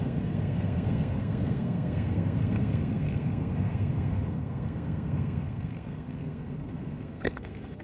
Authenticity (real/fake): fake